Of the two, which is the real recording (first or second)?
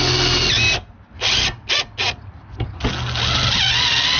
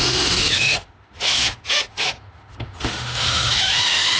first